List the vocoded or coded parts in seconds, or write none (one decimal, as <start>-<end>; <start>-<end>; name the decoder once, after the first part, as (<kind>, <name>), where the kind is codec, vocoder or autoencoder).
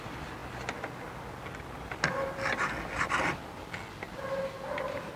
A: none